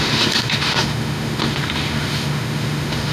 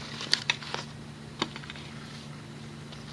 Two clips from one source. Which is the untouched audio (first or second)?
second